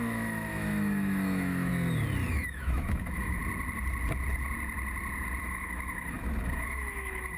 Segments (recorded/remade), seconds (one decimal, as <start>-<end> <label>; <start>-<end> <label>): 0.0-1.7 remade; 1.7-2.3 recorded; 2.3-3.4 remade; 3.4-5.4 recorded; 5.4-7.4 remade